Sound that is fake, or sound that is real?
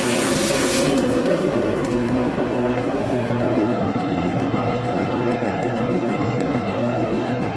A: fake